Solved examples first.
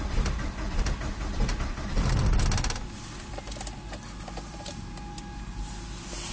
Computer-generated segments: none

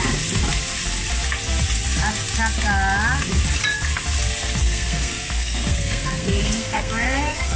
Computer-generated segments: 4.6-7.6 (codec, SNAC)

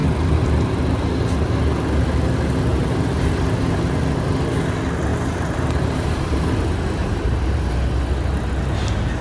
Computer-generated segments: 2.7-3.3 (vocoder, BigVGAN v2); 5.1-6.4; 7.0-7.7

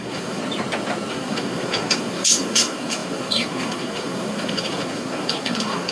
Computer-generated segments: 0.0-0.4 (codec, SNAC); 1.1-5.9

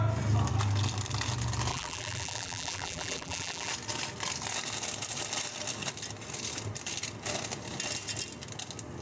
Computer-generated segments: 1.7-3.7 (vocoder, BigVGAN v2)

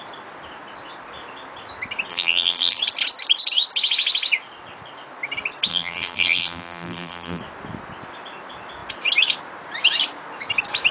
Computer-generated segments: 2.1-2.8 (vocoder, BigVGAN v2); 5.7-7.4